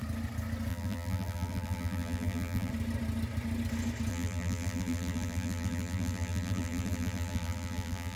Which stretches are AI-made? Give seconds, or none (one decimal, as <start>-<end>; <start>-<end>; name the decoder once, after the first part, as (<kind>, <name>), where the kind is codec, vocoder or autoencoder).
0.7-2.7 (vocoder, BigVGAN v2); 4.1-8.2